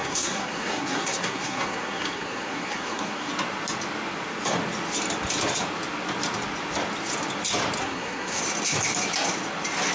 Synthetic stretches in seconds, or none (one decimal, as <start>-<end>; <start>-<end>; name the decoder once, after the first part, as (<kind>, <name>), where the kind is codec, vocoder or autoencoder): 0.0-3.3 (codec, SNAC); 7.8-8.4